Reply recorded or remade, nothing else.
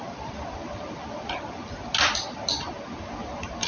recorded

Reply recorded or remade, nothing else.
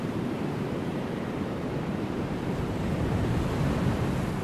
remade